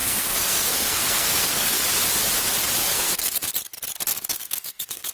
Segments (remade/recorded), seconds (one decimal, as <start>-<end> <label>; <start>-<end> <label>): 0.0-1.8 remade; 1.8-2.8 recorded; 2.8-3.5 remade; 3.5-4.1 recorded; 4.1-5.1 remade